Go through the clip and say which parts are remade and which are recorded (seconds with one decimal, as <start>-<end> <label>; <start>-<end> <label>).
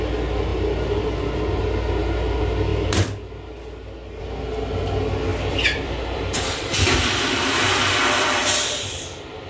0.0-5.3 recorded; 5.3-9.5 remade